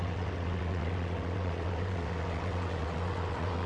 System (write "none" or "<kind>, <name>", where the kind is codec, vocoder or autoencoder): vocoder, WaveNeXt